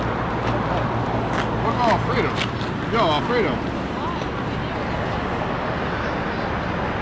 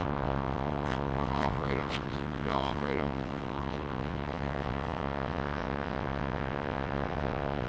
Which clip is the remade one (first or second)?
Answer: second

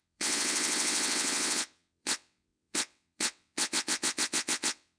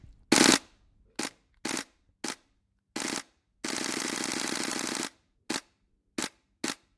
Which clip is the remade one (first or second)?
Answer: first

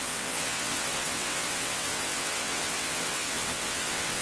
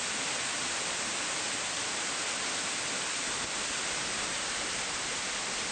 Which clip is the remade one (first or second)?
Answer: first